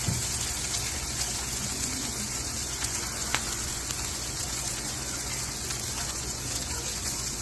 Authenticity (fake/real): fake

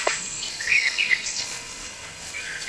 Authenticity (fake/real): fake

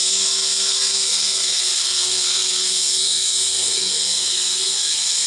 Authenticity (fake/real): fake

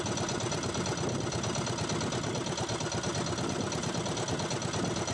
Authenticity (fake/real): real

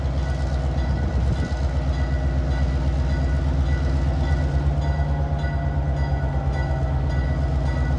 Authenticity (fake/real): real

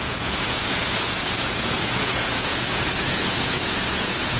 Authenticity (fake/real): fake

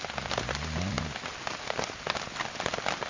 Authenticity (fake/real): real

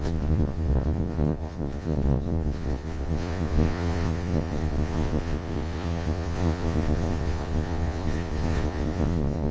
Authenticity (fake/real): fake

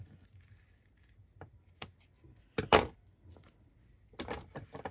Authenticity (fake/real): real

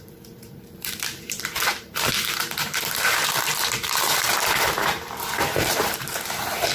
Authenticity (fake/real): fake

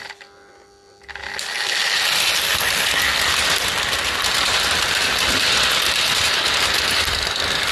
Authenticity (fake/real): real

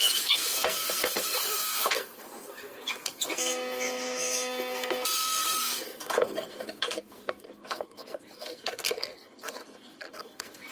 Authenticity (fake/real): fake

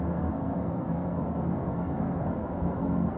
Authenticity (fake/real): fake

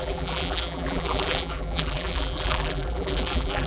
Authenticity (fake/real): fake